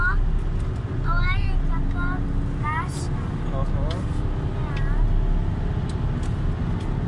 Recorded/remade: recorded